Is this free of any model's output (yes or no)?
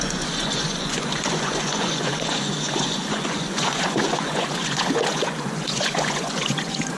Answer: no